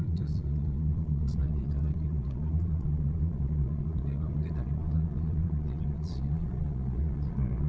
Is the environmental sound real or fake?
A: fake